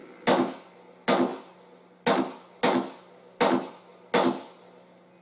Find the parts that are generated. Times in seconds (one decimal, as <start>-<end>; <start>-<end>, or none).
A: none